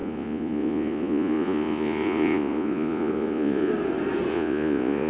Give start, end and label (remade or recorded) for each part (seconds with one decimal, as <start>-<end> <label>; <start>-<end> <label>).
0.0-3.7 remade; 3.7-4.3 recorded; 4.3-5.1 remade